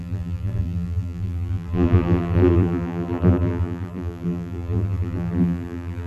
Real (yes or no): no